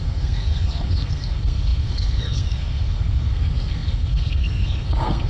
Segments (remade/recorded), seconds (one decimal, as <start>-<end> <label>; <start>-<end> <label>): 0.0-5.3 remade